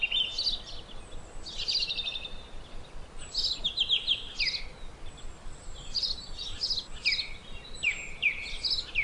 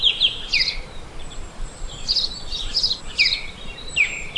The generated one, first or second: second